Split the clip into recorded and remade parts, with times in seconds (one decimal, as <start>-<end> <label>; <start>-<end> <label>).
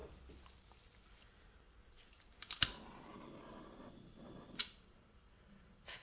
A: 0.0-6.0 recorded